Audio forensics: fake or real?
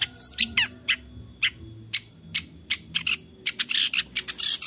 real